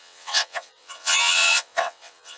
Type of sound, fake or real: fake